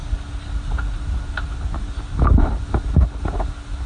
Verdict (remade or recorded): recorded